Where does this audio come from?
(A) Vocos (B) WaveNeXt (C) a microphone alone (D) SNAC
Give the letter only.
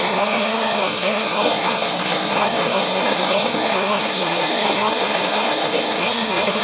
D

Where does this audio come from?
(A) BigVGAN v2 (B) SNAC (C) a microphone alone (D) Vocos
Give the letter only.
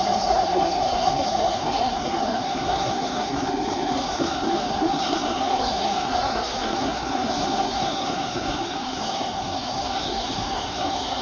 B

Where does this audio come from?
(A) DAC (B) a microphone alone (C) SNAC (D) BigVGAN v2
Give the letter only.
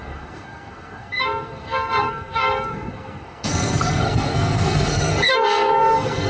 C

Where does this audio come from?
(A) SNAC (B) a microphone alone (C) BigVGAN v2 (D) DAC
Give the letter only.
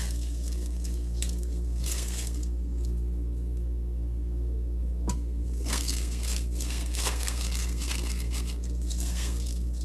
A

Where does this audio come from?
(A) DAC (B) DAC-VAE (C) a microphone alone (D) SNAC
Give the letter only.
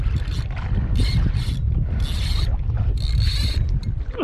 C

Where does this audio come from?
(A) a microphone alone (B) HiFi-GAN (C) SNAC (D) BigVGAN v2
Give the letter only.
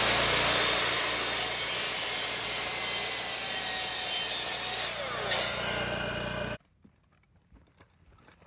A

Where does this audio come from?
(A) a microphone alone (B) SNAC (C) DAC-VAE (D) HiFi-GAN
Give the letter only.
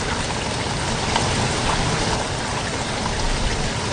A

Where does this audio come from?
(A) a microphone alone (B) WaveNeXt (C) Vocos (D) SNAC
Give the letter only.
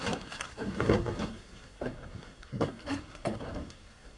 D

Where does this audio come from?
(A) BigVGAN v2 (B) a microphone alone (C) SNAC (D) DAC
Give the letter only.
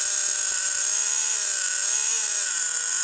B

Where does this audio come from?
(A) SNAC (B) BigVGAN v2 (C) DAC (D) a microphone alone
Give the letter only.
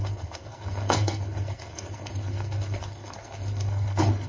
A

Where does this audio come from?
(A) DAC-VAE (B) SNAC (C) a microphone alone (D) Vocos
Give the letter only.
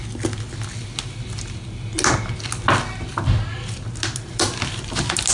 C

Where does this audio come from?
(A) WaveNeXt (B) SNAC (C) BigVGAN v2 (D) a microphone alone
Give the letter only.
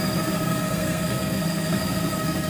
B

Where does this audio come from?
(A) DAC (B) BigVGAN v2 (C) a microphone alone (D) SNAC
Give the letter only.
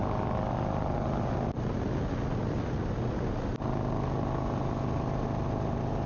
C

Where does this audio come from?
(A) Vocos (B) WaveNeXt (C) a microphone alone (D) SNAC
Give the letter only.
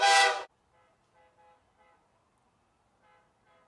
C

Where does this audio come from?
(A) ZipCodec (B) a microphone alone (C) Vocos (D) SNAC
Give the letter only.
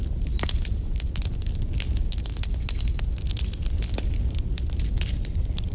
B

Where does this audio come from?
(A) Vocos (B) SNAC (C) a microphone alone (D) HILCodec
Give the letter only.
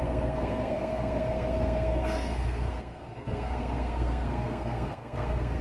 B